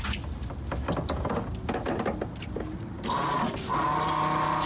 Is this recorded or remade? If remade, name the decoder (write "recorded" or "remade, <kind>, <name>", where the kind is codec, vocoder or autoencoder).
recorded